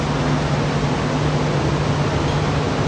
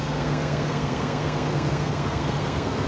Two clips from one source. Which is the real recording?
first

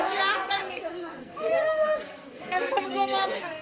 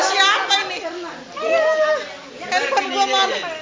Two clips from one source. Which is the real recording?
second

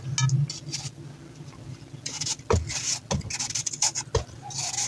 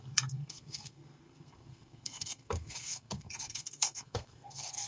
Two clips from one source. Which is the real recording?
first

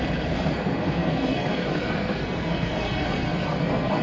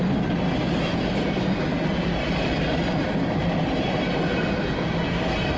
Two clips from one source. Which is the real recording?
second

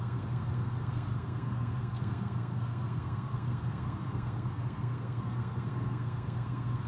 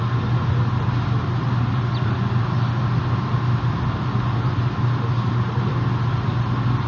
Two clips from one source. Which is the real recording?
second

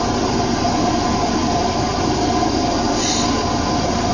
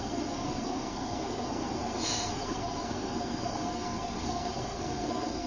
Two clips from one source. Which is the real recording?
first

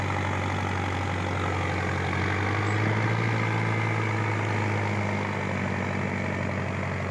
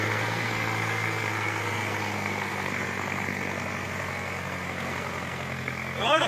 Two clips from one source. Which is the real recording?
first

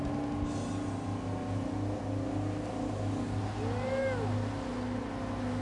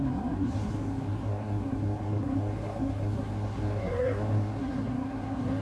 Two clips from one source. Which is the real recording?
first